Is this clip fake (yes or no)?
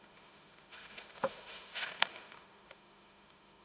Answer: yes